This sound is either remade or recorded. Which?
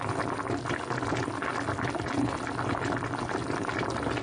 recorded